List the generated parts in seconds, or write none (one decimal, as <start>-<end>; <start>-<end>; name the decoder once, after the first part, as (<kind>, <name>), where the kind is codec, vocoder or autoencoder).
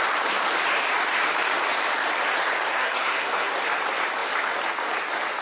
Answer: 2.7-3.5 (codec, SNAC)